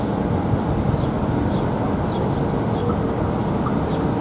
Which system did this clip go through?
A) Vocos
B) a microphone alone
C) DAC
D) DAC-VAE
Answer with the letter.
B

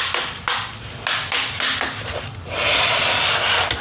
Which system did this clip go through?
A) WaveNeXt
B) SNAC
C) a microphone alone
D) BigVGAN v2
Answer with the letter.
C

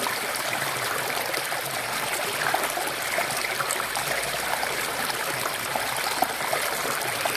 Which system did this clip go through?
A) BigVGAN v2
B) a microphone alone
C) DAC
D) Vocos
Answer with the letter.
A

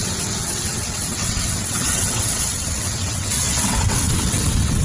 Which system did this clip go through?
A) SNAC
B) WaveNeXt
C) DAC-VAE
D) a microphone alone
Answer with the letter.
B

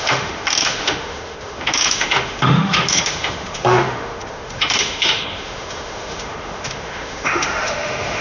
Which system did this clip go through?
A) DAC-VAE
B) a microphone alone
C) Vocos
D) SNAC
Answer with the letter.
A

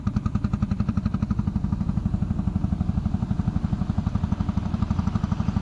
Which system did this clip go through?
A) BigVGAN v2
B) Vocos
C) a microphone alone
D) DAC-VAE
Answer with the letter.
A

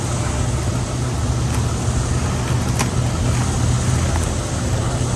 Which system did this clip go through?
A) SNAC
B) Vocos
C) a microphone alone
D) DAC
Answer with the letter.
C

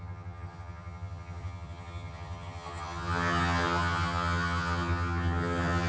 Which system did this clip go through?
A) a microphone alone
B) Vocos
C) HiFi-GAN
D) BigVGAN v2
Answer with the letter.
C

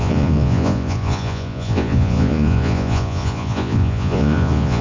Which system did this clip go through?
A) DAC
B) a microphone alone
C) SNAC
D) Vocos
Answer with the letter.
D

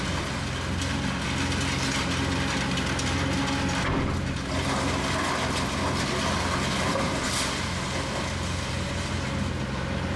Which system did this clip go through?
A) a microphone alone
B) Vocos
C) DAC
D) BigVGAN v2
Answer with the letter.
A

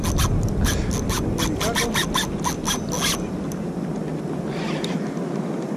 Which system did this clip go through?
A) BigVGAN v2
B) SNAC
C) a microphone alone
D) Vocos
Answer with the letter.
C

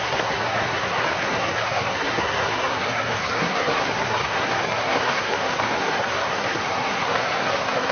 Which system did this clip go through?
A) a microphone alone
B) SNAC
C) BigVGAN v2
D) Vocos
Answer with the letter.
B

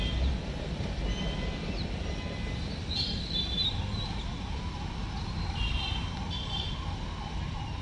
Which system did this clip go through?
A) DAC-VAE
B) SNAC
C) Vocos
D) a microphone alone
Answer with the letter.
D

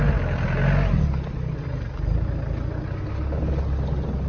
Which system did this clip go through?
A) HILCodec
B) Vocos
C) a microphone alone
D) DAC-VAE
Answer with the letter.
C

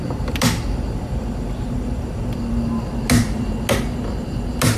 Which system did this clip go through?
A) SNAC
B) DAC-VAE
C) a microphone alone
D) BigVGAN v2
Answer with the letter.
C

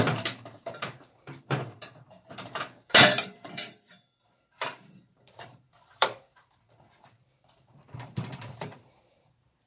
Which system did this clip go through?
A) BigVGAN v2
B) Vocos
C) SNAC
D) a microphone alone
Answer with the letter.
A